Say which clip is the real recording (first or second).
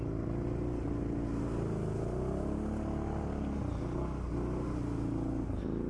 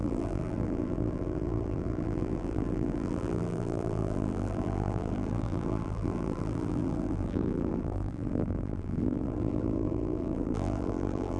first